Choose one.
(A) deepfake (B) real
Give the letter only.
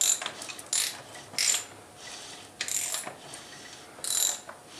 B